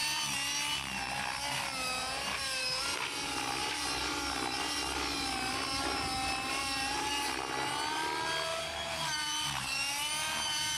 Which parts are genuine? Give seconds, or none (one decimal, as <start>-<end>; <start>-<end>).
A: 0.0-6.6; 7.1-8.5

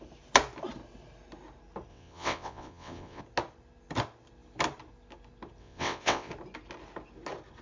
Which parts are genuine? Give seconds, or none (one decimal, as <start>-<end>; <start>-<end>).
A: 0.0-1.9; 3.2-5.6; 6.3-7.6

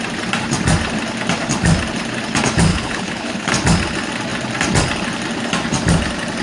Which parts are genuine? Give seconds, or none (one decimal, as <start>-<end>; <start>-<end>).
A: 0.0-2.7; 3.5-6.4

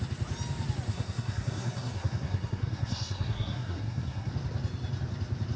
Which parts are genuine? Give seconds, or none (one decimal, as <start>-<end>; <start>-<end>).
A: 0.0-0.9; 4.3-5.6